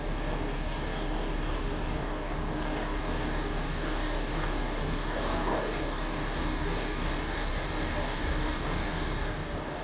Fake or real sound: fake